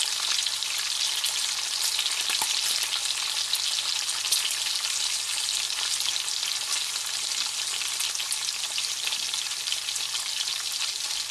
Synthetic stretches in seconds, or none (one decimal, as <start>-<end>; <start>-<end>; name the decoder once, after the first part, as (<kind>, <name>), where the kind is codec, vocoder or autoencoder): none